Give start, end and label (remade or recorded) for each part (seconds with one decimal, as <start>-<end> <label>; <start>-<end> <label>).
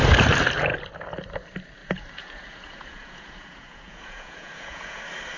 0.0-1.8 recorded; 1.8-5.0 remade; 5.0-5.4 recorded